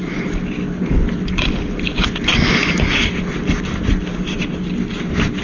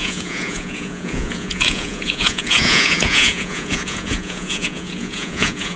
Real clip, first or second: first